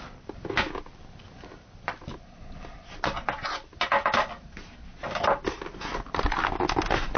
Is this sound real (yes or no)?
yes